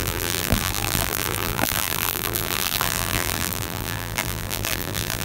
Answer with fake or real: fake